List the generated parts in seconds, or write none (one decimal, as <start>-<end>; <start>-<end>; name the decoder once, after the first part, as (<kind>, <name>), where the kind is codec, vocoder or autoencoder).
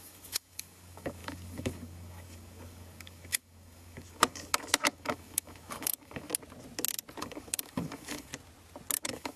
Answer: 0.0-6.3 (codec, DAC); 7.2-8.3; 9.0-9.4